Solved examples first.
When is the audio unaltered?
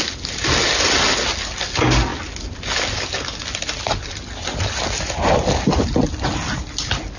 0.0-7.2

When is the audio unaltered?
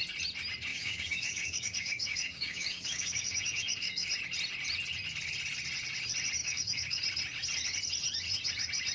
0.0-0.7; 4.1-6.4; 7.0-8.9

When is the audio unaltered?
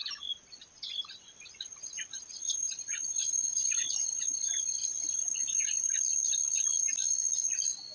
0.0-2.6; 3.2-7.9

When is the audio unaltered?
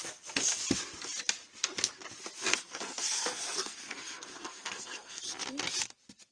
0.0-2.5; 5.2-6.3